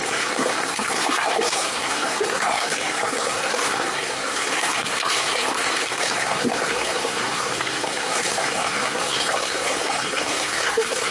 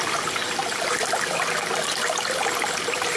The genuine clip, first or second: second